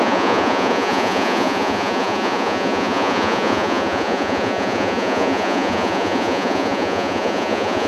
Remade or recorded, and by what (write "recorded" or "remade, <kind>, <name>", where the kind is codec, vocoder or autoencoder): remade, vocoder, Vocos